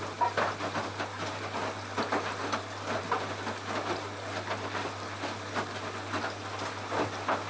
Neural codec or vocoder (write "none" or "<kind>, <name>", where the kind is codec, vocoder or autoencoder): none